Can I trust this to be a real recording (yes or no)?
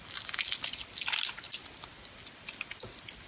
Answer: yes